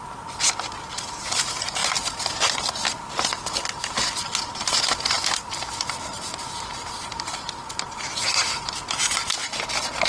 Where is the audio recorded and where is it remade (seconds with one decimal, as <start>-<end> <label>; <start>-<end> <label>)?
0.0-10.1 recorded